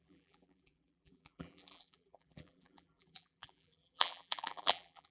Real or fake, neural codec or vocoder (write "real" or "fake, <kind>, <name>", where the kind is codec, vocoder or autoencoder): fake, vocoder, BigVGAN v2